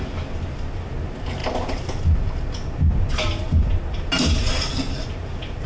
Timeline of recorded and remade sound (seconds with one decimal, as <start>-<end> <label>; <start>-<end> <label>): 0.0-5.7 recorded